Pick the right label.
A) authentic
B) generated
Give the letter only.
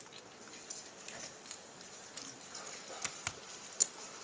A